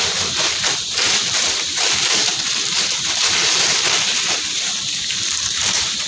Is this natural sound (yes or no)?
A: no